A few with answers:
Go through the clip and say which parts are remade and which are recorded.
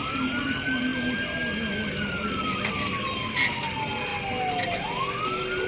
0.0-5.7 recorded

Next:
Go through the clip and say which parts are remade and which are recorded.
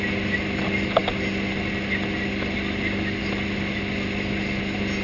0.0-5.0 recorded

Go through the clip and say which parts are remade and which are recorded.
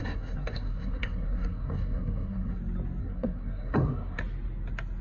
0.0-2.6 remade; 2.6-3.0 recorded; 3.0-4.2 remade; 4.2-5.0 recorded